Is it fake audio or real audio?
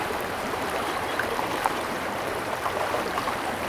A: fake